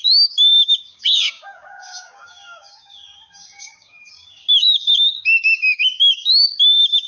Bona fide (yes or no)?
no